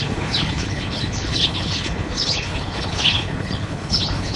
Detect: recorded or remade remade